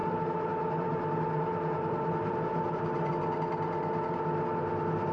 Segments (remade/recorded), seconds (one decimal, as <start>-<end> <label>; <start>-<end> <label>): 0.0-3.1 remade; 3.1-5.1 recorded